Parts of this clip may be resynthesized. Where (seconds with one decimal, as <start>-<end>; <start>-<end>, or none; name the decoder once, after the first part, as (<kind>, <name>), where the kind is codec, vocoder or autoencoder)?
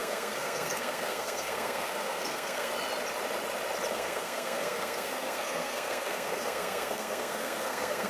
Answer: 0.0-2.7 (codec, SNAC); 3.9-8.1